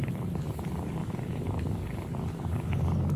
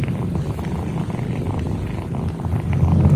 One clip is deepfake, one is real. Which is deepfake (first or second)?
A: first